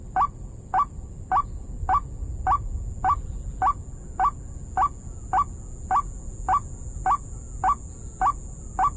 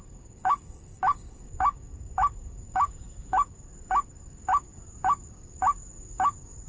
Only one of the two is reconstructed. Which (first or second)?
second